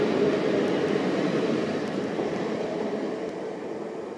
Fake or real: fake